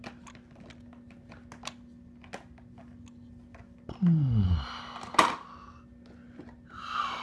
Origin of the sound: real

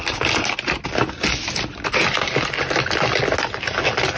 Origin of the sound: real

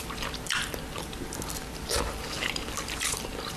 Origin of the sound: real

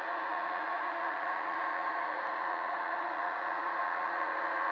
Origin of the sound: fake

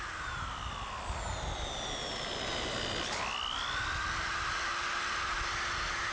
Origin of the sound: real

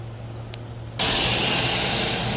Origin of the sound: real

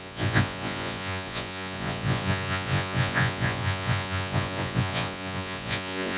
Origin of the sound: fake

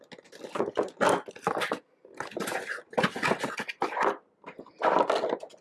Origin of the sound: real